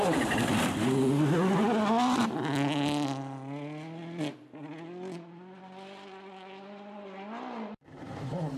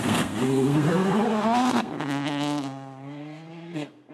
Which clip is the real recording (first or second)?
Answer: first